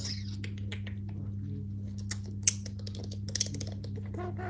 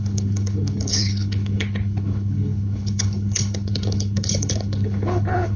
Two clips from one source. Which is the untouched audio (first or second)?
first